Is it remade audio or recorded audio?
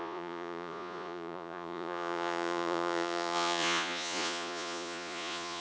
remade